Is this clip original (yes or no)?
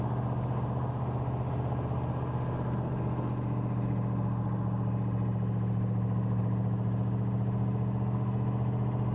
yes